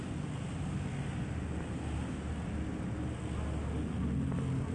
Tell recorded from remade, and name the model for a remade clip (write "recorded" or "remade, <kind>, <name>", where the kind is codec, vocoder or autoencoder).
recorded